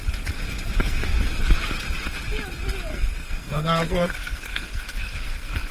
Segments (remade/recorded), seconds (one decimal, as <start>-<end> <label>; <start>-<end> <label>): 0.0-0.8 recorded; 0.8-1.4 remade; 1.4-2.9 recorded; 2.9-5.7 remade